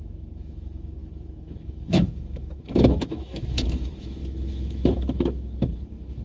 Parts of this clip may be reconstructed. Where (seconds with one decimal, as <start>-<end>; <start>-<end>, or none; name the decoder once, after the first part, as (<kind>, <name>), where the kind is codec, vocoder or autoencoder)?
0.0-6.2 (autoencoder, DAC-VAE)